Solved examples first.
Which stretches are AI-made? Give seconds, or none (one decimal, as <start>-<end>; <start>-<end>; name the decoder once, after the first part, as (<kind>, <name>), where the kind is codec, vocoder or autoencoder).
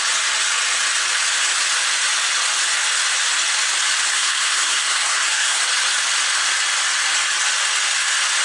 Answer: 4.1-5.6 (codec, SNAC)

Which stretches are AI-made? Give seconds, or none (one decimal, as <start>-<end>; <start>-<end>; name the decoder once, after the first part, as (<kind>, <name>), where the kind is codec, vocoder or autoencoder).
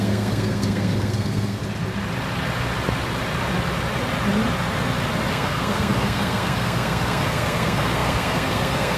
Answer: 0.0-1.6 (codec, SNAC); 5.3-9.0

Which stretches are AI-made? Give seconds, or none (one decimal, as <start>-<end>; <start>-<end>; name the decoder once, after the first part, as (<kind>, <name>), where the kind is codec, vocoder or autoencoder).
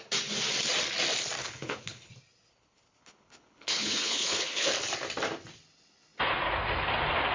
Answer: 1.4-2.1 (codec, HILCodec); 2.5-4.7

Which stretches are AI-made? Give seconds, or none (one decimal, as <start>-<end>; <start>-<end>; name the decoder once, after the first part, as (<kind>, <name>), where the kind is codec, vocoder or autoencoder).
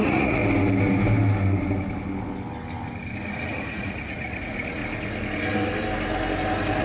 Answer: 0.0-0.4 (vocoder, Vocos); 3.5-4.8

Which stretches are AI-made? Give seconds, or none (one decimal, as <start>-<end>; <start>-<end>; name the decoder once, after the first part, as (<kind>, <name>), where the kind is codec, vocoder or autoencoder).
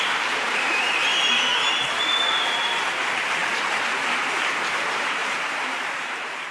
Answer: 0.0-1.1 (vocoder, BigVGAN v2); 2.4-3.4; 4.3-6.5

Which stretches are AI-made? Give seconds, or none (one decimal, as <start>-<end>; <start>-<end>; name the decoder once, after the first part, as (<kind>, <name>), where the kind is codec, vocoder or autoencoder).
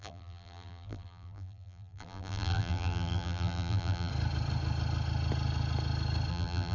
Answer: 0.0-4.1 (vocoder, BigVGAN v2); 6.3-6.7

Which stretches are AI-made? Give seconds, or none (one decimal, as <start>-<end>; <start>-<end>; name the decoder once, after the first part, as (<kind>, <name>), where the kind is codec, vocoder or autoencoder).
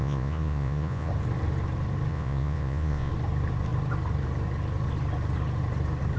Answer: 0.0-1.1 (vocoder, Vocos); 2.1-3.1